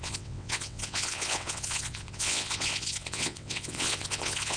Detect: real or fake fake